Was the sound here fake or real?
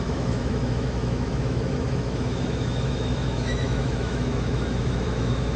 fake